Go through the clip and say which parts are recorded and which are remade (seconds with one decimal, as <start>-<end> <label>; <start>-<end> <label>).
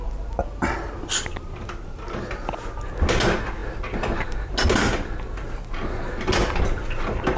0.0-7.4 recorded